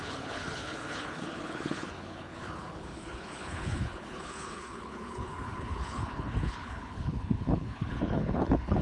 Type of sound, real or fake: fake